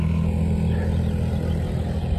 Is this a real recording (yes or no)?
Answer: yes